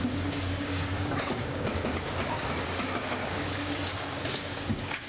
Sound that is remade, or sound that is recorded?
remade